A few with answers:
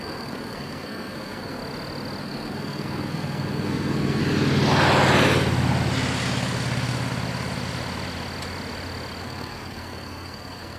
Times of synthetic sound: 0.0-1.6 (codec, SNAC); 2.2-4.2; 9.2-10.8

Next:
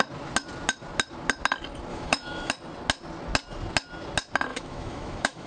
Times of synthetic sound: 1.9-2.5 (autoencoder, DAC-VAE); 4.5-5.5

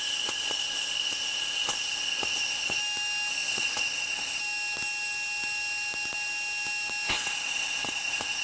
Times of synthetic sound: 0.0-2.8 (codec, ZipCodec); 3.3-4.4; 7.1-8.4

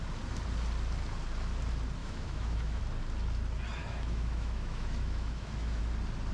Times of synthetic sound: 2.0-2.8 (autoencoder, DAC-VAE); 3.8-5.8

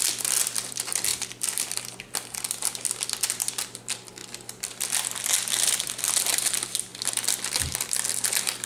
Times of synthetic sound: none